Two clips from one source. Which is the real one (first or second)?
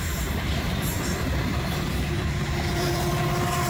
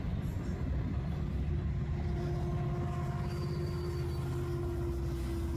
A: second